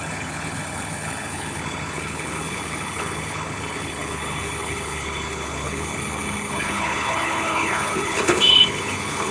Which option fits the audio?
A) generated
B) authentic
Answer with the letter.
A